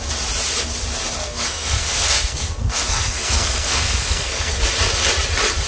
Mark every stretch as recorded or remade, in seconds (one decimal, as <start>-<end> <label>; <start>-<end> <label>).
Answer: 0.0-1.2 recorded; 1.2-4.6 remade; 4.6-5.7 recorded